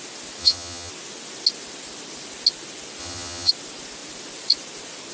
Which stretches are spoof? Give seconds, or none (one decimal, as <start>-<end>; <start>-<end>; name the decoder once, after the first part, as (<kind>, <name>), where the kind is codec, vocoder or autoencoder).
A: 0.4-0.9 (vocoder, HiFi-GAN); 3.0-3.5